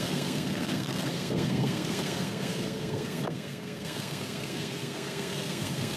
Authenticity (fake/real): fake